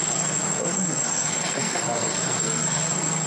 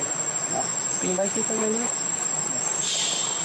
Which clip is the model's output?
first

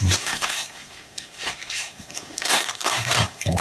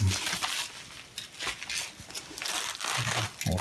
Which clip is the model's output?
first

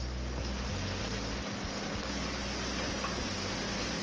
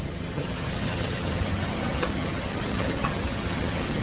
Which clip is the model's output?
second